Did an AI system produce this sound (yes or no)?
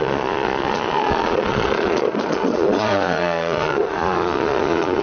yes